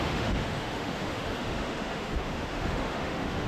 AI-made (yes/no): yes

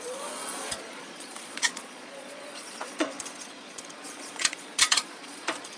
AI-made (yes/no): yes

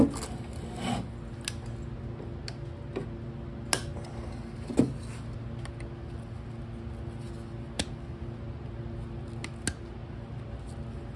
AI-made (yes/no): no